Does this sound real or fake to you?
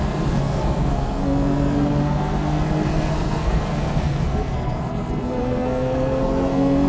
fake